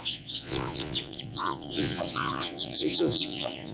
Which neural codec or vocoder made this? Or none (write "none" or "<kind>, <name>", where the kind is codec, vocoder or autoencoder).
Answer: vocoder, Vocos